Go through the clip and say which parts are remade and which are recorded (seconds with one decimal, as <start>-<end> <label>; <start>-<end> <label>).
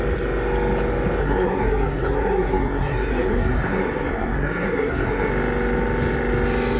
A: 0.0-1.2 recorded; 1.2-5.3 remade; 5.3-6.8 recorded